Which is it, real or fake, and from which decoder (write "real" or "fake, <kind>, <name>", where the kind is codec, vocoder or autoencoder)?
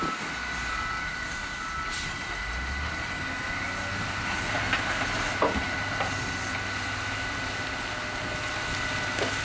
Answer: real